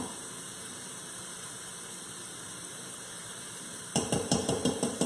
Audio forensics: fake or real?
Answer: fake